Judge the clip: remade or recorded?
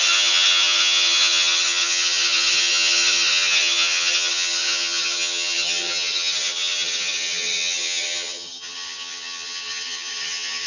remade